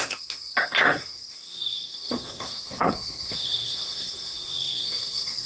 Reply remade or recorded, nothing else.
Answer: remade